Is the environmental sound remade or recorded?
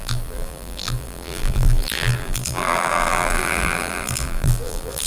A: remade